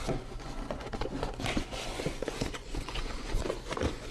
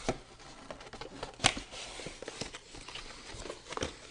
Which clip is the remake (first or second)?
first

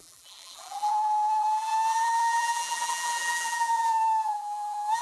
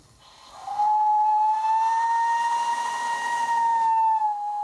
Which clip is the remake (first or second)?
first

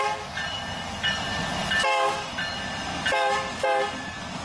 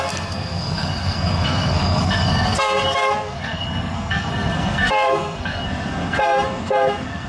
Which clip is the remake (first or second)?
second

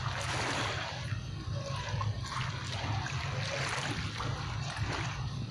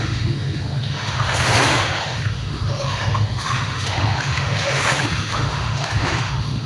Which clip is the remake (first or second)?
second